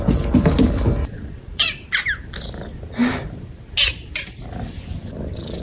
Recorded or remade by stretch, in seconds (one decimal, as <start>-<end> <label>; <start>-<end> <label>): 0.0-1.0 recorded; 1.0-1.7 remade; 1.7-5.6 recorded